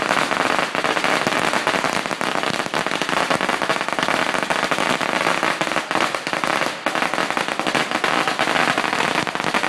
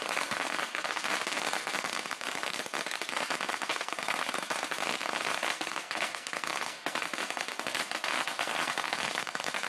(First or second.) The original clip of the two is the first